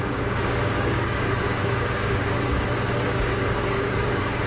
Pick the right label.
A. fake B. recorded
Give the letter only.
A